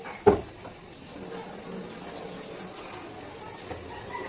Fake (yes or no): no